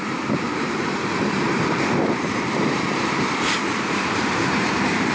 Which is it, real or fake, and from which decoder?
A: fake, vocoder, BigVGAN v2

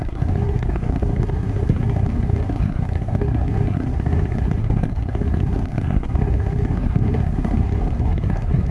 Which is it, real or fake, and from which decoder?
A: fake, codec, SNAC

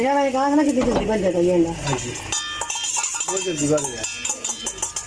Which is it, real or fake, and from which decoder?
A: real